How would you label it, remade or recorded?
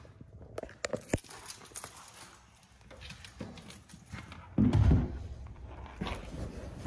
recorded